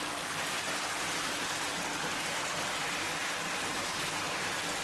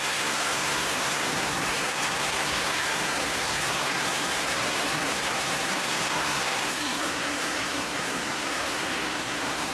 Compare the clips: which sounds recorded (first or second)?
first